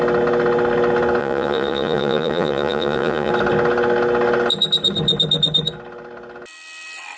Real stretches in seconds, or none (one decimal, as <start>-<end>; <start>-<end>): 0.0-1.2; 3.3-7.2